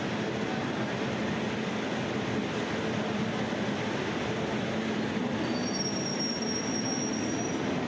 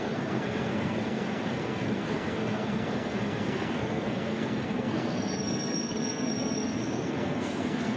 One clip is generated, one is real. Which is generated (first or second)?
second